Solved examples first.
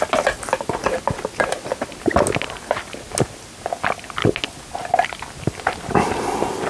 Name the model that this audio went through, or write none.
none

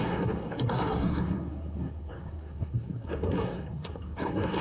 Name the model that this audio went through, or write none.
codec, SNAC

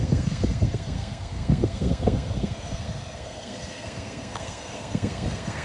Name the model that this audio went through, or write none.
codec, SNAC